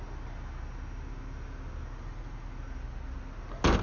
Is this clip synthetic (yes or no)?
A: no